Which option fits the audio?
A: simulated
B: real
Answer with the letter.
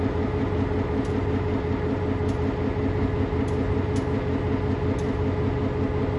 B